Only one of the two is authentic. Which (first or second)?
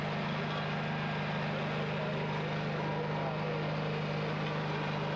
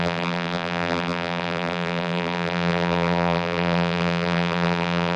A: first